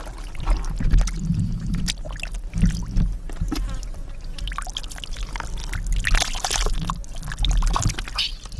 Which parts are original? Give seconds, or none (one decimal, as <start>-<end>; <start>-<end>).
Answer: 0.0-8.6